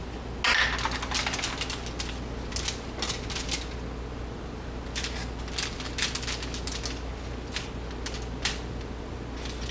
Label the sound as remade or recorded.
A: recorded